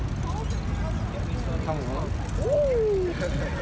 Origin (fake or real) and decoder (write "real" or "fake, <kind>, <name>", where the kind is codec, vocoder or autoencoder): real